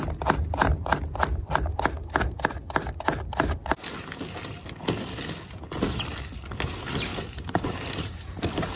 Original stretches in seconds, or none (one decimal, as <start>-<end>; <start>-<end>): 0.0-7.1; 8.4-8.8